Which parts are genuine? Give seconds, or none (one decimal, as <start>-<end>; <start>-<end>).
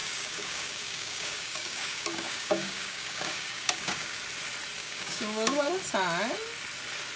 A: 4.2-4.8; 5.7-7.2